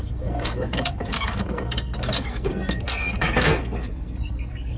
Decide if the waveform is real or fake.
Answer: fake